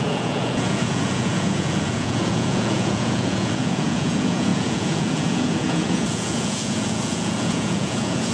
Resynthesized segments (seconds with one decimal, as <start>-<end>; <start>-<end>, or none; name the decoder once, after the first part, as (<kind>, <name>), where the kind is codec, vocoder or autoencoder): 0.0-8.3 (vocoder, Vocos)